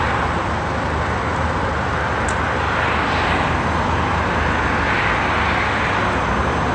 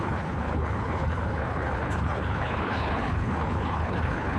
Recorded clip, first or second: first